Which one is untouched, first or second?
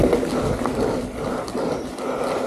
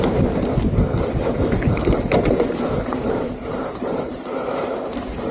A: first